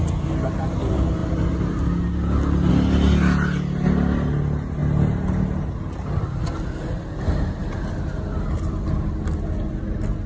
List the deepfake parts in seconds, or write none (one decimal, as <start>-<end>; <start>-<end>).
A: none